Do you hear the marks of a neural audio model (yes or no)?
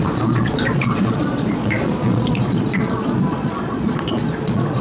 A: yes